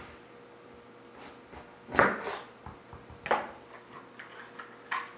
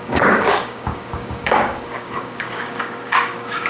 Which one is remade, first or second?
second